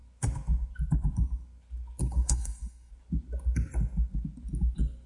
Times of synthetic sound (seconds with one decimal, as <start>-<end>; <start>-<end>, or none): 2.0-2.9